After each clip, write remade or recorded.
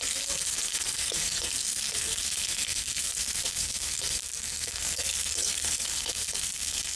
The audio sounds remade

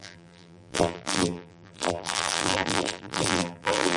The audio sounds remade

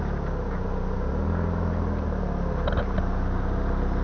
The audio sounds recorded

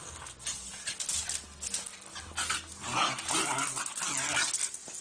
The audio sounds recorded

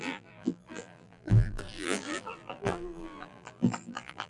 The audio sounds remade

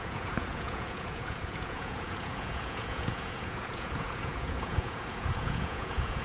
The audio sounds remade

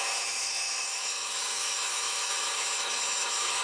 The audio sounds remade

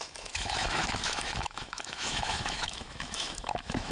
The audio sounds remade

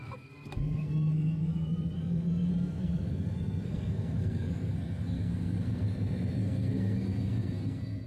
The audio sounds remade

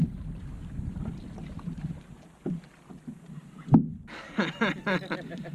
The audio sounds recorded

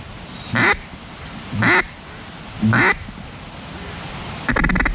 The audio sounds recorded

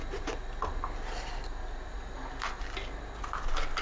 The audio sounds recorded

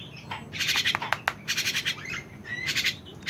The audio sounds recorded